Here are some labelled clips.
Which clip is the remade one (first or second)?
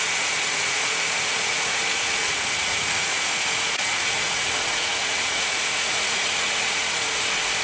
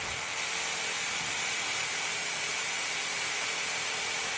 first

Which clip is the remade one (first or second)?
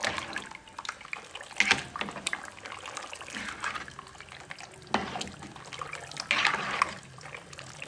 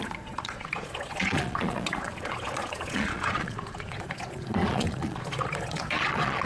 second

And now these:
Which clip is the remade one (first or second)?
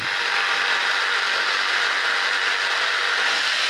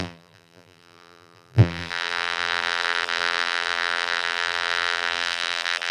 second